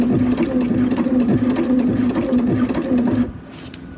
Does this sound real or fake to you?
real